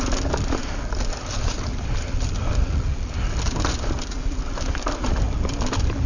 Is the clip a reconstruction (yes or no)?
no